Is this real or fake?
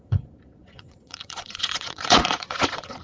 fake